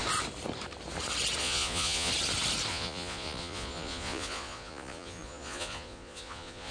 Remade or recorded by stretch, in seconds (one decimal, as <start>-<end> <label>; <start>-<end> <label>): 0.0-1.4 recorded; 1.4-2.1 remade; 2.1-2.7 recorded; 2.7-6.7 remade